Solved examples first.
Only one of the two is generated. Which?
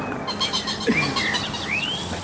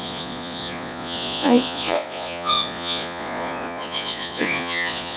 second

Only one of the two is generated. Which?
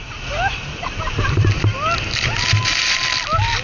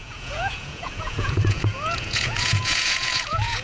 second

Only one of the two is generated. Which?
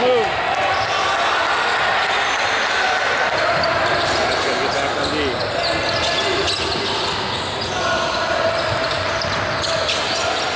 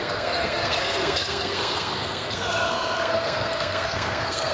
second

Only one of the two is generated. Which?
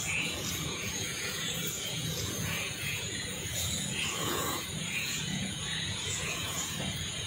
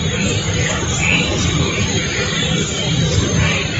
first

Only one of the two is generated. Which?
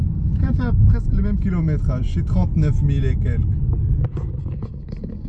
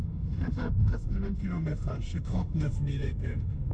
second